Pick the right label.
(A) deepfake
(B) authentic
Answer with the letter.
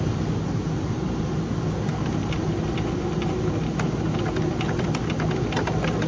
B